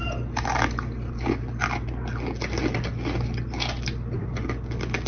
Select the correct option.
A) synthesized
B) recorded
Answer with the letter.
B